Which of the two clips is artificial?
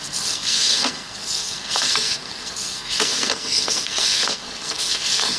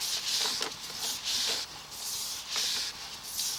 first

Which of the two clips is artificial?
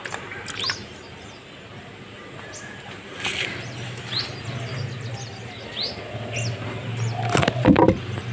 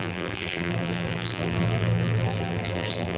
second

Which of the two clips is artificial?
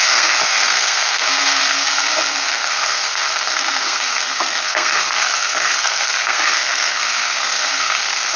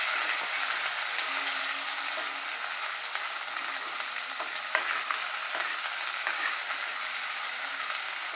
first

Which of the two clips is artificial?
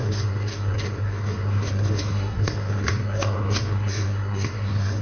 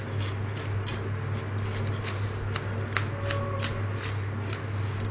first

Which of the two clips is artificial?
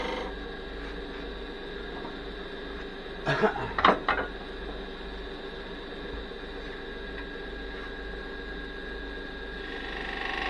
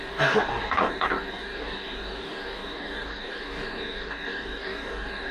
second